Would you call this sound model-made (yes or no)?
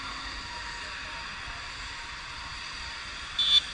no